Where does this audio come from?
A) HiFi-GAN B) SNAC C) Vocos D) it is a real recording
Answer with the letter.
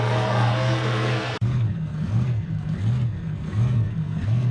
B